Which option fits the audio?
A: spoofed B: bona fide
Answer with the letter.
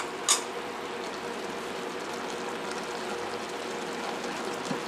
B